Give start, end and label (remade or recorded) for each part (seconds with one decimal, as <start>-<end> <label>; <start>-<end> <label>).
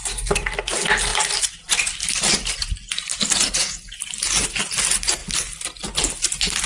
0.0-6.7 recorded